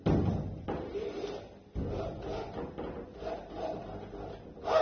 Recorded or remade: recorded